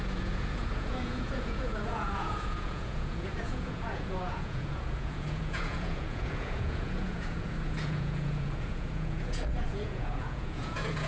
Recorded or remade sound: remade